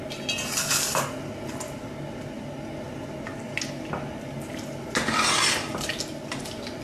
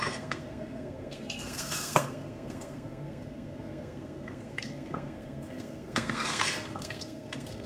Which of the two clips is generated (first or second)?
second